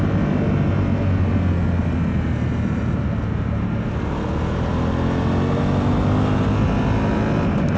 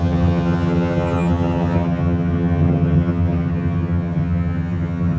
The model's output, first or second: second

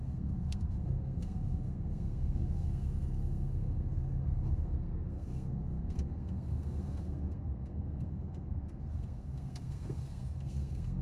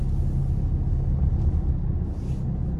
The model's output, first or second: first